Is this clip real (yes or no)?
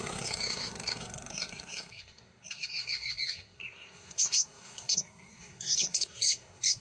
no